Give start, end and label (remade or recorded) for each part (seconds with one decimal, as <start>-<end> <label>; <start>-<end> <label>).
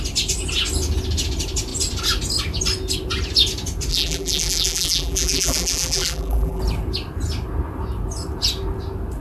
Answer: 0.0-3.9 recorded; 3.9-6.6 remade; 6.6-9.2 recorded